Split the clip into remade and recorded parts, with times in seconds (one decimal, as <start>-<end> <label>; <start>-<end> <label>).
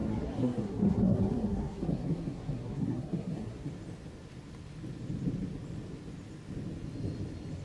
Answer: 0.0-3.7 remade; 3.7-7.6 recorded